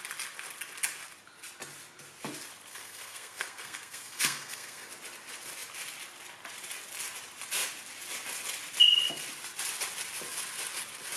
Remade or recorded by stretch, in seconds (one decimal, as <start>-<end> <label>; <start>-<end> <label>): 0.0-2.7 recorded; 2.7-4.9 remade; 4.9-11.2 recorded